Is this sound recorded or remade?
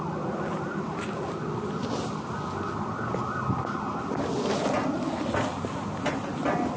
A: recorded